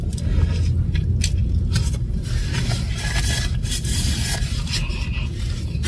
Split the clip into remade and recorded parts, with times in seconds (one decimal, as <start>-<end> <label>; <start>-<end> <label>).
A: 0.0-5.9 recorded